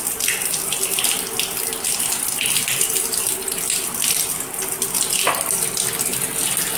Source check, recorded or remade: recorded